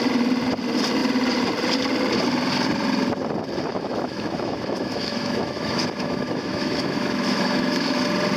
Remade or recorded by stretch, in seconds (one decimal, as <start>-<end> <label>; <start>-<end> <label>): 0.0-3.7 recorded; 3.7-8.0 remade; 8.0-8.4 recorded